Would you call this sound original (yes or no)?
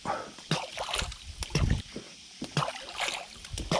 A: yes